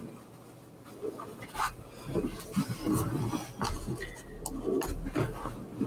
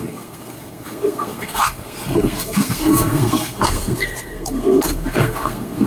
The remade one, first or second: second